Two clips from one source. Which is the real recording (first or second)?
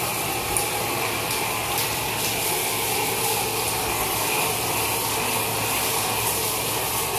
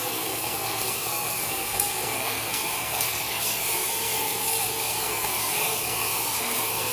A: first